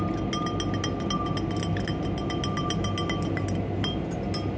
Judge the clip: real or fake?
real